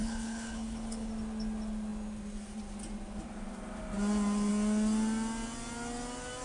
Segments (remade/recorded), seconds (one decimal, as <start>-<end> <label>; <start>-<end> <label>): 0.0-1.1 remade; 1.1-6.4 recorded